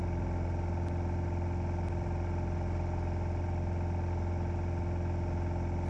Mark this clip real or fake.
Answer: real